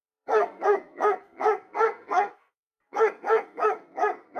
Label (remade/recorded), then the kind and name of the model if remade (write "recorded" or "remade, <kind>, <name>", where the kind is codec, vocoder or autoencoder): remade, codec, SNAC